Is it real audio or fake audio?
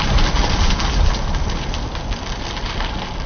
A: real